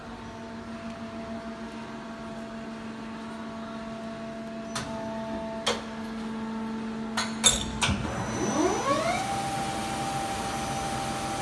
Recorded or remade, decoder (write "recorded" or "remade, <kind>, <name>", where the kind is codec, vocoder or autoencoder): recorded